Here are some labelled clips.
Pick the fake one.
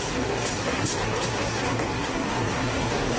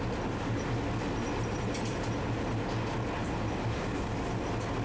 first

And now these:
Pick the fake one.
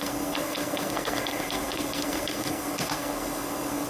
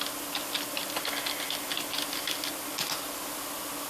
first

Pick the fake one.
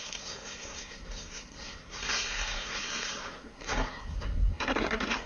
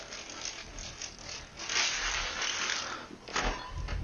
first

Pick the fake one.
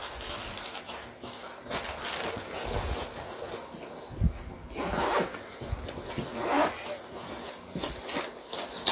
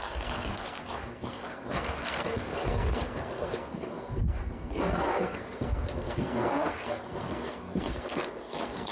second